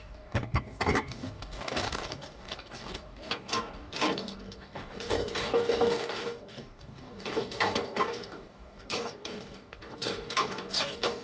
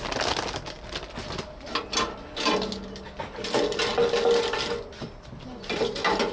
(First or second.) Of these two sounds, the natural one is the second